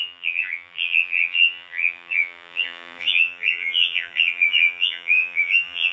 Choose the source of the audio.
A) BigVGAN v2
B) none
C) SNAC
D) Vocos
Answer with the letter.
A